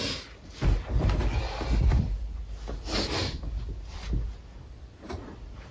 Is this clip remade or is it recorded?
recorded